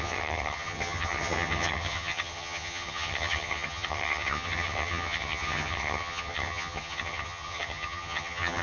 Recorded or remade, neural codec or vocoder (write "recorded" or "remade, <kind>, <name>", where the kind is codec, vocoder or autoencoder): remade, vocoder, HiFi-GAN